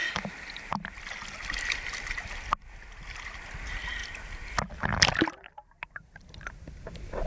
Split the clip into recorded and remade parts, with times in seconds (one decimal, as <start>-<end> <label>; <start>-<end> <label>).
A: 0.0-7.3 recorded